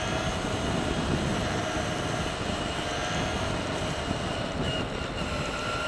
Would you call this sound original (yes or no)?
yes